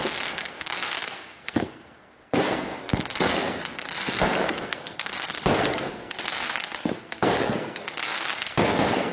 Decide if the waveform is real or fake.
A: fake